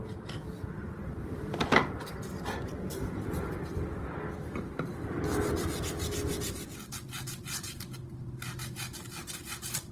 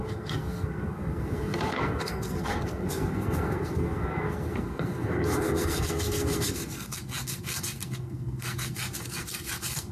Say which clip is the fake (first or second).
second